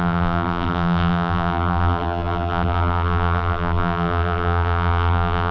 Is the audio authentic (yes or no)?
no